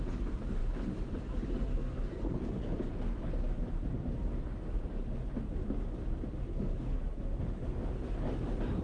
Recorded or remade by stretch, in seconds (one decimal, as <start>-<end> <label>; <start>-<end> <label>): 0.0-1.7 recorded; 1.7-2.8 remade; 2.8-6.5 recorded; 6.5-7.0 remade; 7.0-8.8 recorded